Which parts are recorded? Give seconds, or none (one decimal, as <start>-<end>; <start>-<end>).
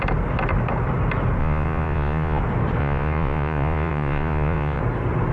0.0-1.4; 2.4-2.8; 4.8-5.3